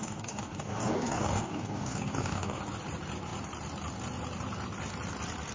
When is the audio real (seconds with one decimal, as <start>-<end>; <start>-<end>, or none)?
2.6-5.5